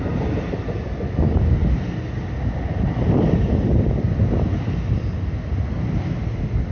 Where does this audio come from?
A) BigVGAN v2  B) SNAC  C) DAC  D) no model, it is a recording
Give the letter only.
D